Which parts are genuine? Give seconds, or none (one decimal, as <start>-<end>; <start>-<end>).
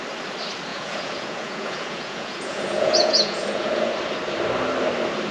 0.0-0.7; 3.9-5.3